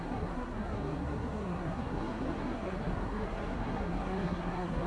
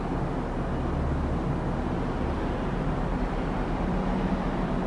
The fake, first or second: first